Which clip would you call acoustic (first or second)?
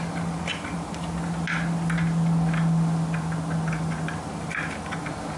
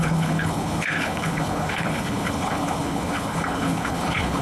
first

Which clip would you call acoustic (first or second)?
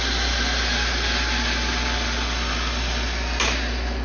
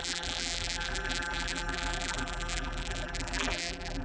first